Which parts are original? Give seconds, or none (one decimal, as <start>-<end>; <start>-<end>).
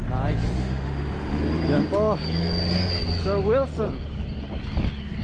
0.0-0.6; 1.4-5.2